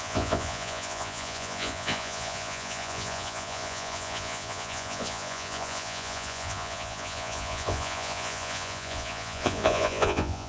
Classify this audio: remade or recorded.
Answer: remade